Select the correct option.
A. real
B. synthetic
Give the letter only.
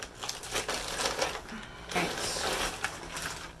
A